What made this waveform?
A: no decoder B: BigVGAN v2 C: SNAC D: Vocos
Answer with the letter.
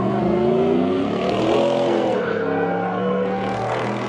C